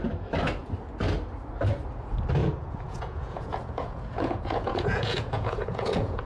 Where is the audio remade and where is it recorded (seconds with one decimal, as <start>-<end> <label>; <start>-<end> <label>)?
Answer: 0.0-2.4 recorded; 2.4-6.2 remade